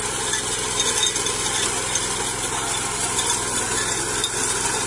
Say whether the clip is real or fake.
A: real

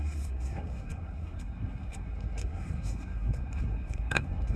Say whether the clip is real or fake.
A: fake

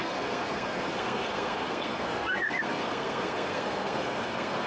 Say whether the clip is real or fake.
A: fake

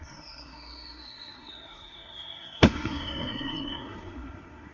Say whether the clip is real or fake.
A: fake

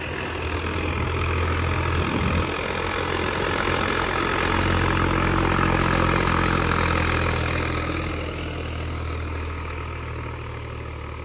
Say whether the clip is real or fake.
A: real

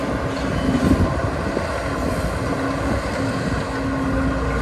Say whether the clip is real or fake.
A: real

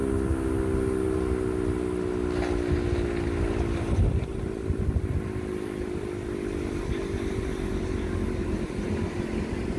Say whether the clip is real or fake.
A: real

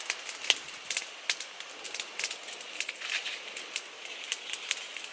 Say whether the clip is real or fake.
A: real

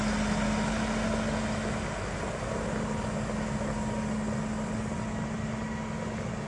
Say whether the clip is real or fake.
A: real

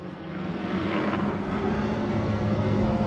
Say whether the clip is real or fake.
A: fake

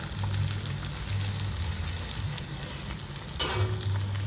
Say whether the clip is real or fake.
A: real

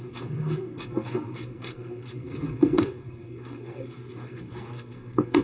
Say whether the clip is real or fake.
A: fake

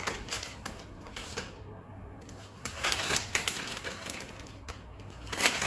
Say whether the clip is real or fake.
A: fake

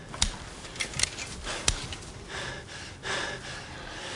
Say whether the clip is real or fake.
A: real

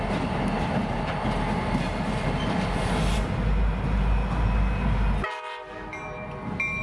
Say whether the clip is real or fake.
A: real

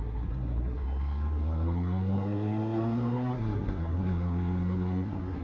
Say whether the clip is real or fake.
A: fake